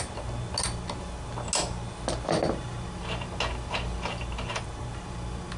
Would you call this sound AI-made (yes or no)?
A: no